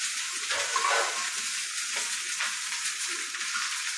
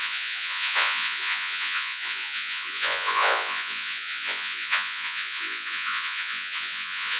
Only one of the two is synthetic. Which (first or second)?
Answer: second